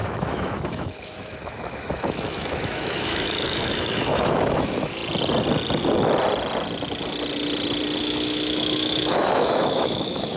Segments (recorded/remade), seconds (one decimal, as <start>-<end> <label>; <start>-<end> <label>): 0.0-5.0 remade; 5.0-8.0 recorded; 8.0-10.4 remade